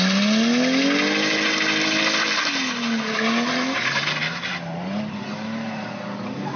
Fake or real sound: real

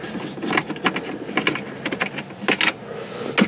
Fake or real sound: real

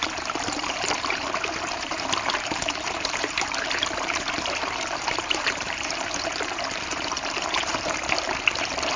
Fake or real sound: fake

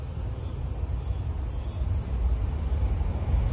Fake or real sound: real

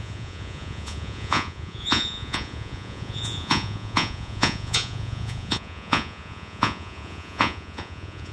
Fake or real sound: fake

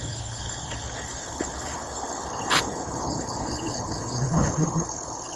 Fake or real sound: fake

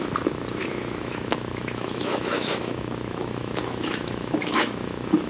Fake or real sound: fake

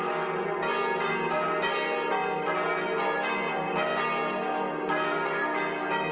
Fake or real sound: real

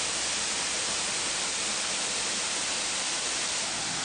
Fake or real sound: real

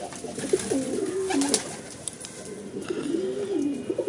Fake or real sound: real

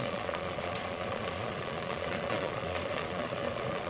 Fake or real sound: fake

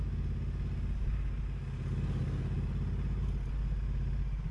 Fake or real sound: real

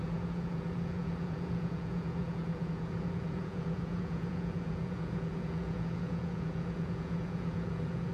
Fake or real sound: fake